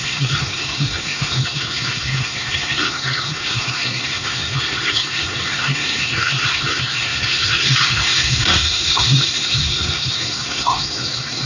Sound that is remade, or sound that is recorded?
remade